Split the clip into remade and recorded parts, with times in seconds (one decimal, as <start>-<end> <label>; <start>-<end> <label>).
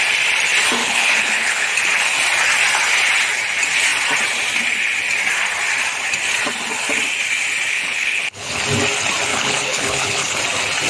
0.0-0.8 recorded; 0.8-1.7 remade; 1.7-7.7 recorded; 7.7-8.6 remade; 8.6-9.3 recorded; 9.3-10.4 remade; 10.4-10.9 recorded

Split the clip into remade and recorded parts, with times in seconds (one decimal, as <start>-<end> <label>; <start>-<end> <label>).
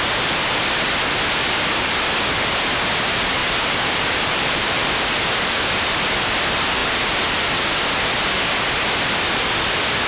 0.0-3.4 recorded; 3.4-4.9 remade; 4.9-10.1 recorded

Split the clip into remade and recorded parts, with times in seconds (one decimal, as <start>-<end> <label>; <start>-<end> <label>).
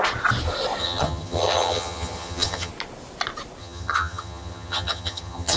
0.0-0.8 recorded; 0.8-2.7 remade; 2.7-3.6 recorded; 3.6-5.6 remade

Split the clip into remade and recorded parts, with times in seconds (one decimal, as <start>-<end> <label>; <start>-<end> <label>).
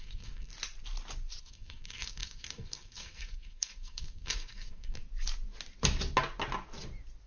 0.0-0.5 remade; 0.5-1.4 recorded; 1.4-5.0 remade; 5.0-7.3 recorded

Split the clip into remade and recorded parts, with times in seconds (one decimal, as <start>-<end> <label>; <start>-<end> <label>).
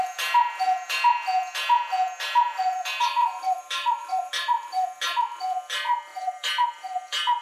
0.0-3.2 recorded; 3.2-4.3 remade; 4.3-6.1 recorded; 6.1-7.4 remade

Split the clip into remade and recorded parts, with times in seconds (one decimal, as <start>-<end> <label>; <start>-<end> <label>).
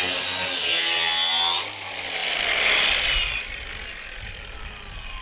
0.0-5.2 recorded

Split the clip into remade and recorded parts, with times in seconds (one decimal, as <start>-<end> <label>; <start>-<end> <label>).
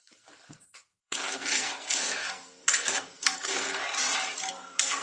0.0-3.8 remade; 3.8-4.5 recorded; 4.5-5.0 remade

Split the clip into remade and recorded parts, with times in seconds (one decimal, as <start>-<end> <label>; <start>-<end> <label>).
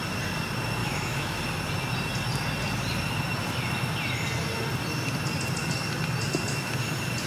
0.0-0.8 recorded; 0.8-1.4 remade; 1.4-7.3 recorded